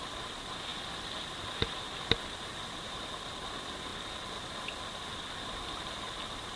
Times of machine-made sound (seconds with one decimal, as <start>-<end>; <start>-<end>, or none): none